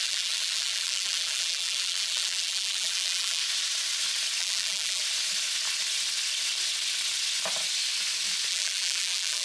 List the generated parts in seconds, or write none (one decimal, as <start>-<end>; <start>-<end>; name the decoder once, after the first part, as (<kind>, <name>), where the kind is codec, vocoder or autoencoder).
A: 0.0-3.4 (vocoder, BigVGAN v2); 4.4-5.0; 8.5-9.4